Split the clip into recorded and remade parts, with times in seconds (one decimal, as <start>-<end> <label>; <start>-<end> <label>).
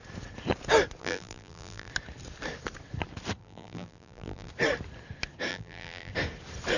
0.0-1.0 recorded; 1.0-1.9 remade; 1.9-3.4 recorded; 3.4-4.5 remade; 4.5-5.5 recorded; 5.5-6.1 remade; 6.1-6.8 recorded